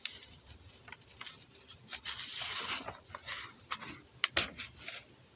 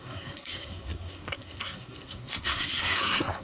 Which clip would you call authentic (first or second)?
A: first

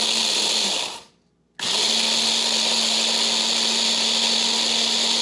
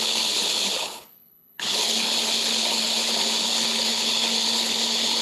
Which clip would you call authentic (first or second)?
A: first